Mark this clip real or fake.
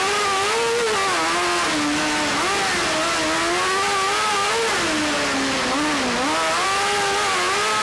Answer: real